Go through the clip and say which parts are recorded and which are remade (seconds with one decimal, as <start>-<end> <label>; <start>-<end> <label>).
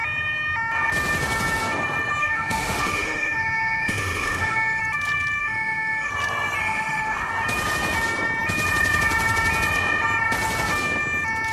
0.0-2.2 recorded; 2.2-4.8 remade; 4.8-5.4 recorded; 5.4-6.1 remade; 6.1-6.6 recorded; 6.6-7.3 remade; 7.3-11.5 recorded